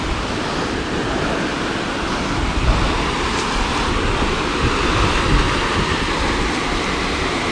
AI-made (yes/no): no